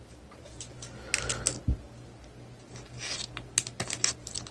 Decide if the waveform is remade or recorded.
recorded